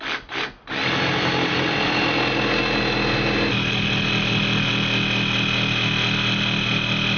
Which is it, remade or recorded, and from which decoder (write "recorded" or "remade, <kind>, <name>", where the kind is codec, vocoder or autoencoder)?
recorded